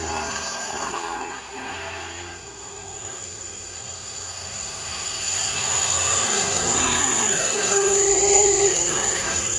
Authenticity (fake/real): fake